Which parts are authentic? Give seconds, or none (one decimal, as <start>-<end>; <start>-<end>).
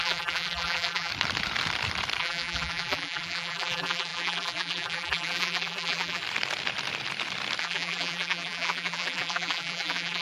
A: 1.1-2.2; 6.2-7.6